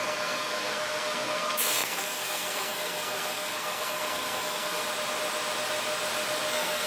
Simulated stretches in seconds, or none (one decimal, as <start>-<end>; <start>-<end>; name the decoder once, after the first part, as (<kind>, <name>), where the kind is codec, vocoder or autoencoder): 0.0-4.8 (codec, SNAC); 6.5-6.9